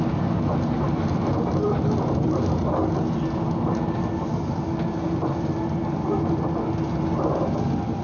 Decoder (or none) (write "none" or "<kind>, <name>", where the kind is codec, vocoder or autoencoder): none